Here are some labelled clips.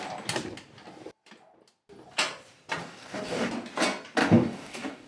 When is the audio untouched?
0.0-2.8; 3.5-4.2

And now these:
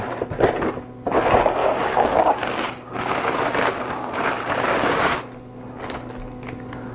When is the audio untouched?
0.0-1.6; 5.2-6.9

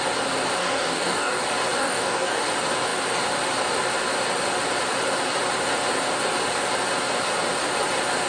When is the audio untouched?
0.0-0.6; 1.4-1.8; 2.4-8.3